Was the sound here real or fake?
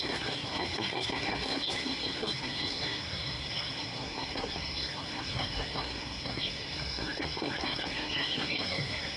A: fake